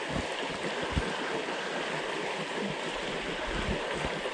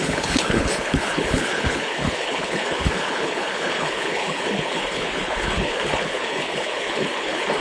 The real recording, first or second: first